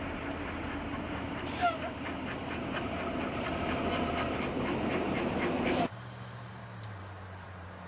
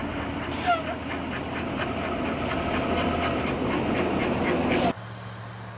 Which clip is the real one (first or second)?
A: second